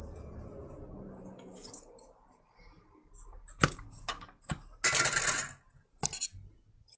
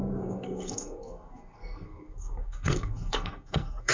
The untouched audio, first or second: first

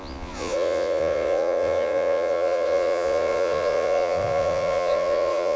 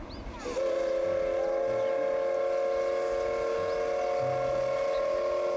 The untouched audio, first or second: second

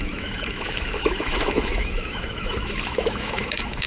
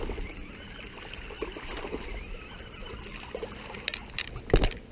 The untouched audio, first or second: second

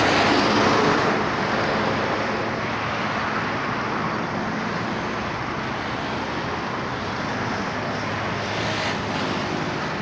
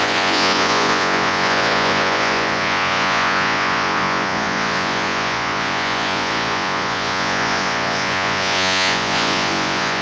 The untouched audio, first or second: first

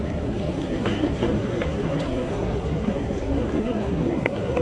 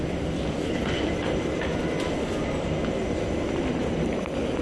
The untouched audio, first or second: second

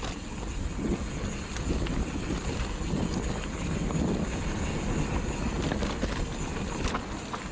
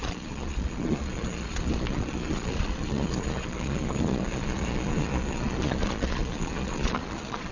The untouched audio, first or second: first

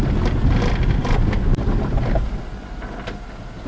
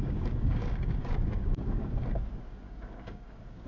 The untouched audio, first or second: first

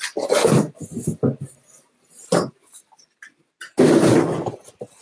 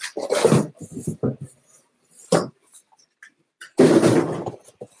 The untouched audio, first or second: first